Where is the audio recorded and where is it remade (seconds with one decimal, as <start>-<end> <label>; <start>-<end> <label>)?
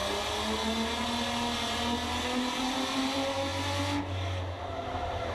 0.0-2.6 recorded; 2.6-3.5 remade; 3.5-4.6 recorded; 4.6-5.3 remade